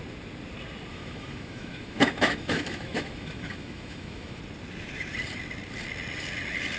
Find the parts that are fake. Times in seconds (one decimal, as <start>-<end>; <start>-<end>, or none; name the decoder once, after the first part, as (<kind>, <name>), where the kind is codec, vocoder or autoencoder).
0.9-4.4 (autoencoder, DAC-VAE)